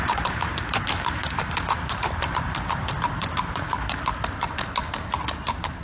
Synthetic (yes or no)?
yes